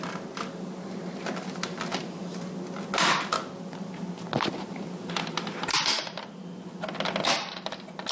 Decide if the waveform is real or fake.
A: real